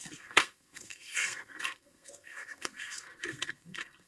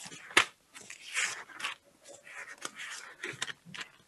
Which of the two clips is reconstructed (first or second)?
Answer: first